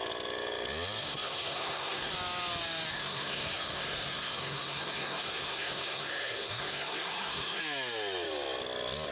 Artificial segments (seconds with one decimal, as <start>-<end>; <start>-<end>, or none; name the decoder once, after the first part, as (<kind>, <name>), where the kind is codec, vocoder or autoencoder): 1.0-2.1 (codec, SNAC); 2.9-7.6